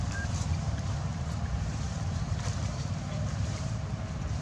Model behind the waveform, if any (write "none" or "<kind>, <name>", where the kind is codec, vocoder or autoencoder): vocoder, BigVGAN v2